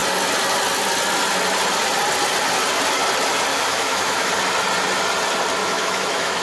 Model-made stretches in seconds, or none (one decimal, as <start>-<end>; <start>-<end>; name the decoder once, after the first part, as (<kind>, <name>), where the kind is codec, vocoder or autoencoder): 3.5-4.3 (autoencoder, DAC-VAE); 5.6-6.4